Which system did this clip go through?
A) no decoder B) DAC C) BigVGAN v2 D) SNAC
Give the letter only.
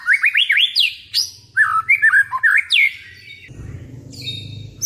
A